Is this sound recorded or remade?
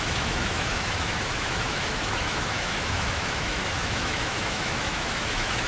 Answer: remade